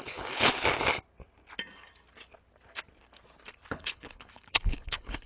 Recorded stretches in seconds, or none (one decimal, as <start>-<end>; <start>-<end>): 0.5-3.7

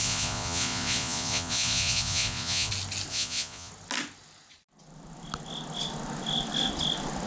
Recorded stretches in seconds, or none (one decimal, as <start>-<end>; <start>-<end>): 2.7-3.1; 3.7-7.3